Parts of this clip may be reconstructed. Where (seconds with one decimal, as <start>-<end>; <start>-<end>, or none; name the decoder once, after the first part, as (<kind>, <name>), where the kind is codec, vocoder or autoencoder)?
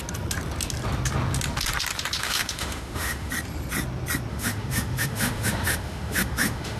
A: 2.2-3.3 (autoencoder, DAC-VAE); 4.3-6.8